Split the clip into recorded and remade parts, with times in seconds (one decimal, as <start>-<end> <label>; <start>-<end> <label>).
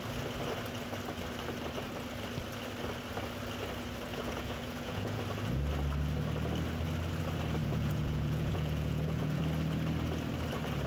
0.0-4.1 recorded; 4.1-5.2 remade; 5.2-7.6 recorded; 7.6-9.4 remade; 9.4-10.9 recorded